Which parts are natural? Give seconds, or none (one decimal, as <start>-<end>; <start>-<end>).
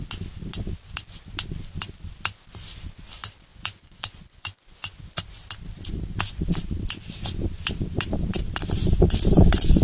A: 0.0-3.5; 5.1-9.8